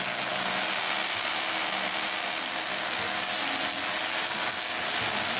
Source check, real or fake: real